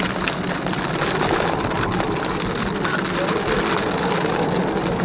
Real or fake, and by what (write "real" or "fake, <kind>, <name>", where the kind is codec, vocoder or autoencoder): real